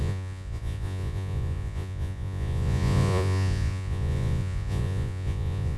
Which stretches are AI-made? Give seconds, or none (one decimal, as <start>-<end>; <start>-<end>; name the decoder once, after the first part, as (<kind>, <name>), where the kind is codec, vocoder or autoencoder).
0.0-5.8 (vocoder, Vocos)